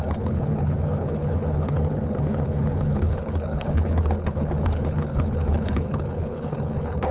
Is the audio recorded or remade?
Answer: remade